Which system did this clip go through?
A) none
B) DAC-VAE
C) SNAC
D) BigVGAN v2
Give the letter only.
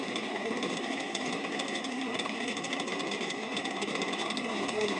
C